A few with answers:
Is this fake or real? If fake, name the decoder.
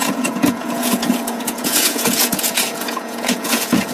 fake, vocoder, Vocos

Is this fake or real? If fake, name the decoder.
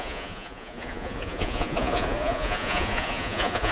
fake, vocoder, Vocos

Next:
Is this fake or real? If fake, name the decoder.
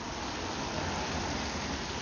real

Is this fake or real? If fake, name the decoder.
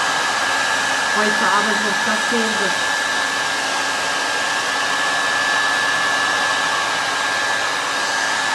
real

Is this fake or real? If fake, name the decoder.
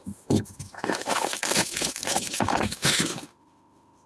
fake, autoencoder, DAC-VAE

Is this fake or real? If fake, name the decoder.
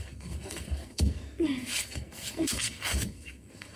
fake, codec, SNAC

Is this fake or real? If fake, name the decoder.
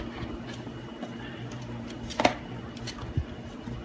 real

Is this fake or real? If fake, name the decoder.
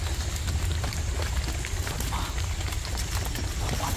real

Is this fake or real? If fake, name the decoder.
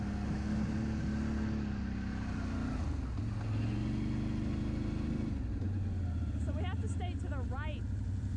real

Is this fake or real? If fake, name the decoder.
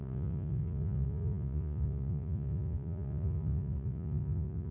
fake, vocoder, Vocos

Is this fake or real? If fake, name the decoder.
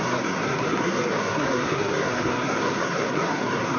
fake, codec, SNAC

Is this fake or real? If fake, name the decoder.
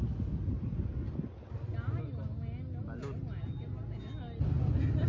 real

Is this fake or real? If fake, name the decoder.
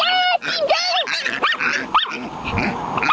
real